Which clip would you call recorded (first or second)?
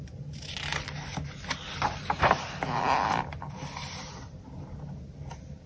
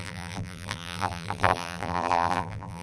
first